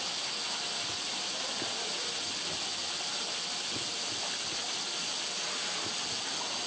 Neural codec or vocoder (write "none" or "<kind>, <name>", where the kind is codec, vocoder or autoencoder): none